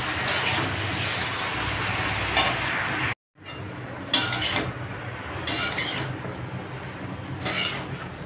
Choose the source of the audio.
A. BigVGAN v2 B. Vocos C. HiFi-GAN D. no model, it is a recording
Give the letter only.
D